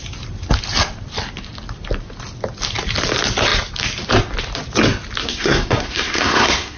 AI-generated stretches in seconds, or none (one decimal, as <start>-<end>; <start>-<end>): 5.2-6.8